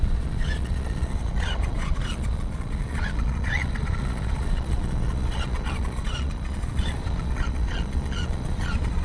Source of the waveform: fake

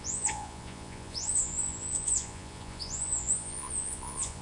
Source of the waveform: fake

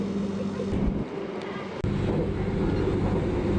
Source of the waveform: real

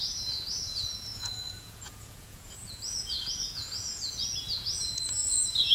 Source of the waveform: fake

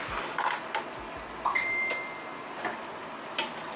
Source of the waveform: real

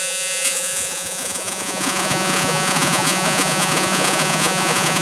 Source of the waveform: fake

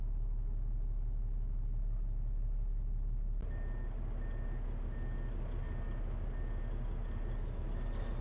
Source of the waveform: real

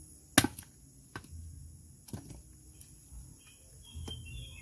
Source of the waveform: real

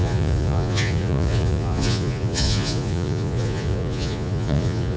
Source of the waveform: fake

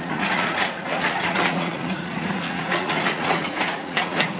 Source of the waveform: fake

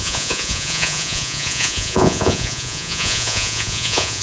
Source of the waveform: fake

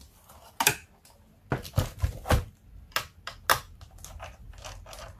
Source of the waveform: real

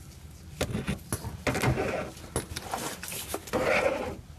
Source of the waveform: real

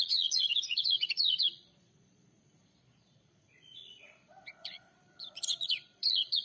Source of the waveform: fake